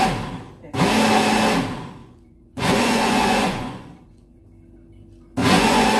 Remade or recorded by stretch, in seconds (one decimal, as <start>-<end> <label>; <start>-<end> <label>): 0.0-2.0 recorded; 2.0-4.4 remade; 4.4-5.4 recorded; 5.4-6.0 remade